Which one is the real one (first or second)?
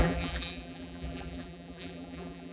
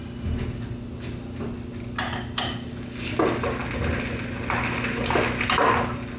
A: second